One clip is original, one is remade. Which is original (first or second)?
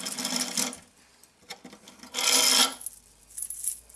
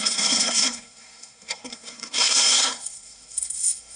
first